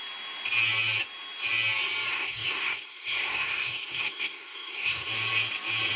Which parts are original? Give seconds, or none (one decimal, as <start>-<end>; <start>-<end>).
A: 0.0-2.1; 5.1-6.0